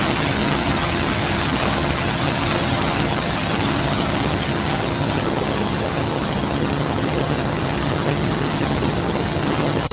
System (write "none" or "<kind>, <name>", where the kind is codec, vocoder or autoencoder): vocoder, HiFi-GAN